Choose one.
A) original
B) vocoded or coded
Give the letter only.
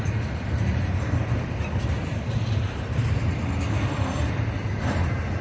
A